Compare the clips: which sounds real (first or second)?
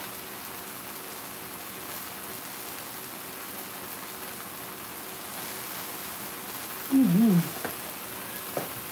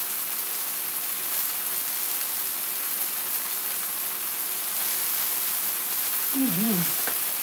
first